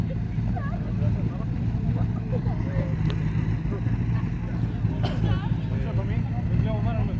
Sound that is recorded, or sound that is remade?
recorded